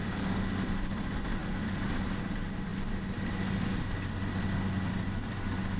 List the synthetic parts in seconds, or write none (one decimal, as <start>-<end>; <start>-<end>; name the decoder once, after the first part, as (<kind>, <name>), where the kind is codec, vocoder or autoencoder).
none